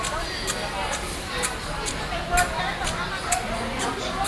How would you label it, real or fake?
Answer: real